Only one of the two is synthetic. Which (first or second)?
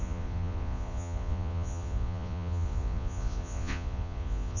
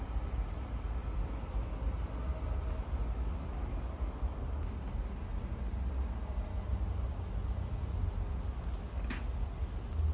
first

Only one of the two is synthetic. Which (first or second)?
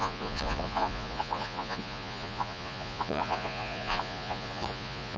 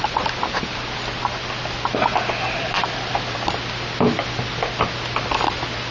first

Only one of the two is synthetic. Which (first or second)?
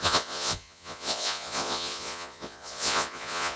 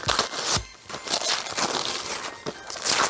first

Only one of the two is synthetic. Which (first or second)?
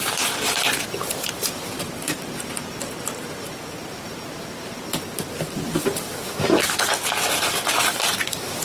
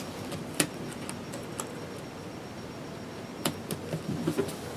first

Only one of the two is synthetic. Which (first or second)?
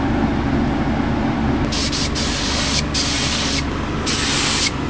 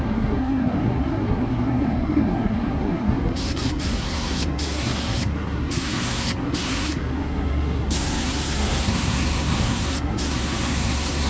second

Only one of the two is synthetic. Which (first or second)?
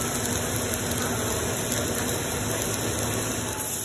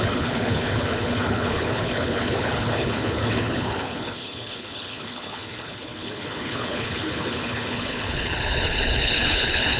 second